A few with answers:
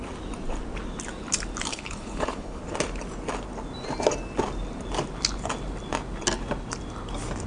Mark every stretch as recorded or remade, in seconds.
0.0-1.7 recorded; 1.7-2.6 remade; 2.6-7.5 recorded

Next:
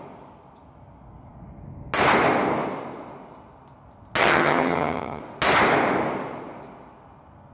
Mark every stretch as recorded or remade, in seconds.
0.0-4.2 recorded; 4.2-5.2 remade; 5.2-7.5 recorded

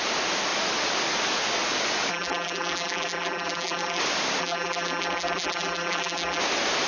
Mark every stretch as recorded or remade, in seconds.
0.0-2.1 recorded; 2.1-4.0 remade; 4.0-4.4 recorded; 4.4-6.4 remade; 6.4-6.9 recorded

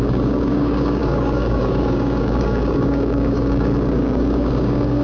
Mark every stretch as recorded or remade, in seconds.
0.0-5.0 remade

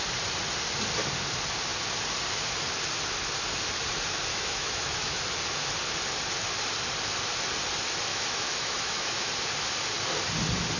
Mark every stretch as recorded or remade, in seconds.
0.0-4.3 recorded; 4.3-5.2 remade; 5.2-8.1 recorded; 8.1-9.3 remade; 9.3-10.8 recorded